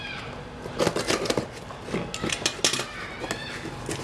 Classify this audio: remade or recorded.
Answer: recorded